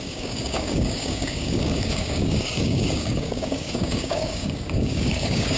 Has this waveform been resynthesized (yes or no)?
yes